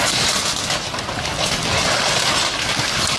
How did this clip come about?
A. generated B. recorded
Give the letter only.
B